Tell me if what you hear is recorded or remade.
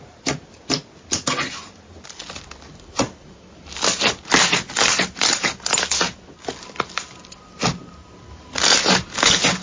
recorded